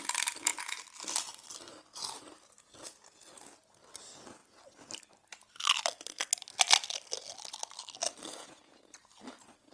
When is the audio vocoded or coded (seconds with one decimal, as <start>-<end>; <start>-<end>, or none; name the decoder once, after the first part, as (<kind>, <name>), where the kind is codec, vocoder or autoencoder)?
8.3-8.9 (vocoder, Vocos)